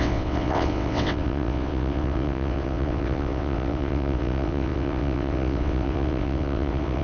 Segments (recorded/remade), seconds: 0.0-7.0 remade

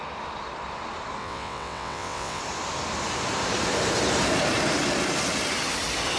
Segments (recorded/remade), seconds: 0.0-1.2 recorded; 1.2-2.4 remade; 2.4-6.2 recorded

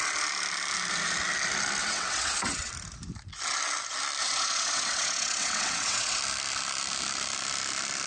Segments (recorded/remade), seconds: 0.0-1.8 recorded; 1.8-2.7 remade; 2.7-4.2 recorded; 4.2-6.2 remade; 6.2-8.1 recorded

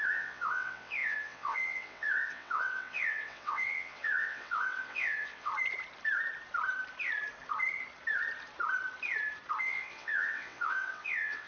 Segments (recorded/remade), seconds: 0.0-5.5 remade; 5.5-9.6 recorded; 9.6-11.5 remade

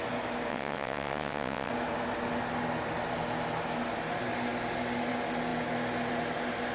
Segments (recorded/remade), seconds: 0.0-0.5 recorded; 0.5-1.7 remade; 1.7-6.7 recorded

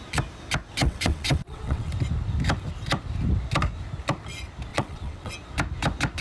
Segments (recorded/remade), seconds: 0.0-0.8 recorded; 0.8-1.9 remade; 1.9-4.7 recorded; 4.7-5.3 remade; 5.3-6.2 recorded

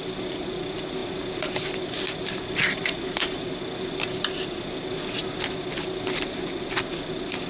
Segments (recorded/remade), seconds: 0.0-7.5 recorded

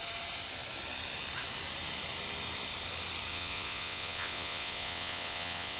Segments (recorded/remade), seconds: 0.0-3.3 recorded; 3.3-5.8 remade